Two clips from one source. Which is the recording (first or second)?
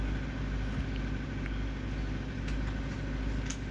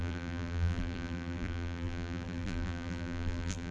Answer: first